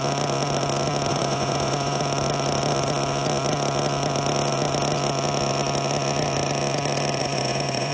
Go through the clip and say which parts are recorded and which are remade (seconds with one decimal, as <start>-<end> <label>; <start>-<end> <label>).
0.0-1.1 recorded; 1.1-2.0 remade; 2.0-7.2 recorded; 7.2-7.9 remade